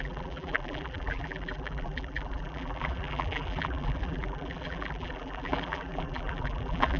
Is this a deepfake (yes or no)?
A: yes